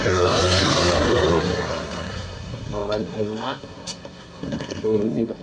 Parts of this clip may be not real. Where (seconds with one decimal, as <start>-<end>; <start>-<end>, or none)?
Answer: 0.0-5.4